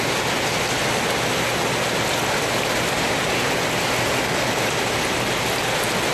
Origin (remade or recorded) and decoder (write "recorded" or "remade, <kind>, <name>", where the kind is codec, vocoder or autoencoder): recorded